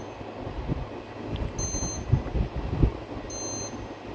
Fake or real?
real